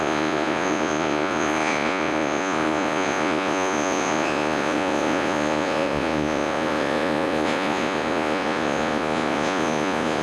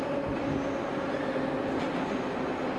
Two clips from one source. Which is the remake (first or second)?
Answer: first